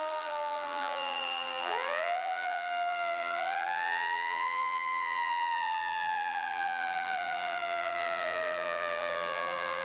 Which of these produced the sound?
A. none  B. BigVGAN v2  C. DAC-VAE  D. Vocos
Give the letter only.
B